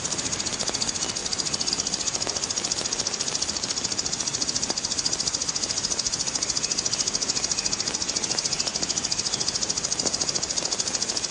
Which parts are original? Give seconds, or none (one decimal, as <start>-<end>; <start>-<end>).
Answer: 0.0-11.3